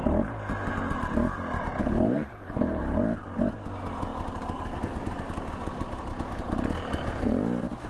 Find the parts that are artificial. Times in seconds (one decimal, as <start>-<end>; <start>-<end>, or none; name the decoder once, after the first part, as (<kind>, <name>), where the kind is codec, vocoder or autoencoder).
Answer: 1.8-2.8 (codec, HILCodec)